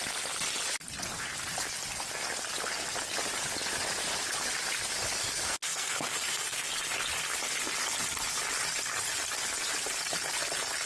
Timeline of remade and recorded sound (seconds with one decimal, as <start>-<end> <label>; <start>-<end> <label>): 0.0-5.2 recorded; 5.2-6.7 remade; 6.7-10.9 recorded